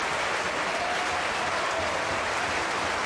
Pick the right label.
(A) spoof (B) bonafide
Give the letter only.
B